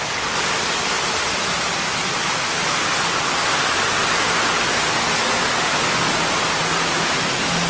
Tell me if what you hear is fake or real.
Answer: real